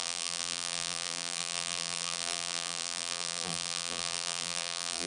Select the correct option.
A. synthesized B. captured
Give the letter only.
A